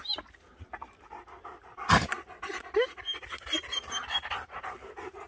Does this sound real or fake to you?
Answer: real